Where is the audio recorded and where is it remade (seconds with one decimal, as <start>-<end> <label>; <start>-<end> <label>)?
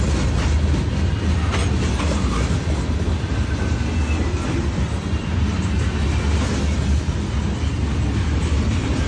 0.0-8.4 recorded; 8.4-9.1 remade